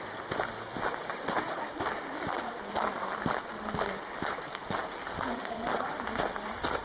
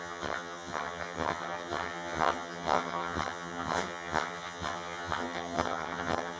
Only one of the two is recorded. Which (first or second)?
first